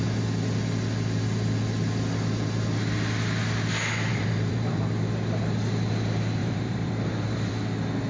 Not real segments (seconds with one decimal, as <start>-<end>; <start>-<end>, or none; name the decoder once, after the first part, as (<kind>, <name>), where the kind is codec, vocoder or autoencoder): 4.1-4.8 (vocoder, BigVGAN v2); 6.4-7.5